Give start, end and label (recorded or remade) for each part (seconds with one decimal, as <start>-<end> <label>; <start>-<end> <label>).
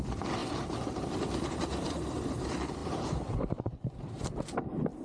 0.0-0.4 recorded; 0.4-1.6 remade; 1.6-2.8 recorded; 2.8-4.4 remade; 4.4-5.0 recorded